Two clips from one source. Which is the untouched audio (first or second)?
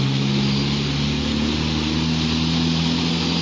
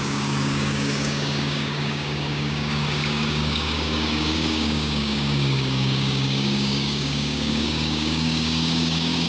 first